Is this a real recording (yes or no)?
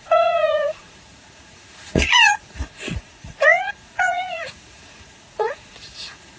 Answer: no